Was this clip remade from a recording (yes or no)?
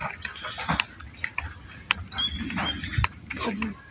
no